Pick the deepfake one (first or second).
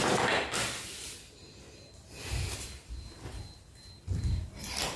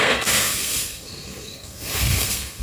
second